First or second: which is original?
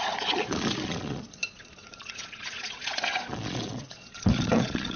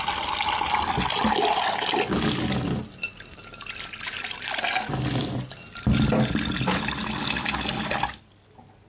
second